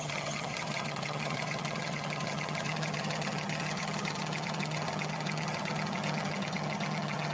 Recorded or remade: remade